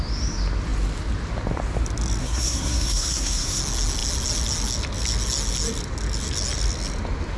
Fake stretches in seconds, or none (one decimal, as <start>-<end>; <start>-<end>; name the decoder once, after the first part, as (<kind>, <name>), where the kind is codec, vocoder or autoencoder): 2.2-3.6 (codec, SNAC)